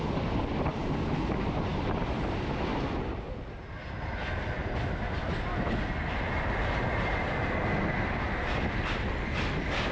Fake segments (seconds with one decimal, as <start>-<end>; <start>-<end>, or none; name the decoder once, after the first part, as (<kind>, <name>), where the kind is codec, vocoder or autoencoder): none